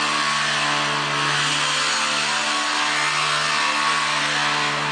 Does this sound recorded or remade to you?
recorded